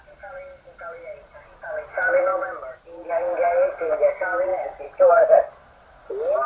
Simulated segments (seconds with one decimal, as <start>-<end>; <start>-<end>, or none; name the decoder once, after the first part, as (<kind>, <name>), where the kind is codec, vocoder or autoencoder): 2.3-3.1 (vocoder, BigVGAN v2); 4.5-5.5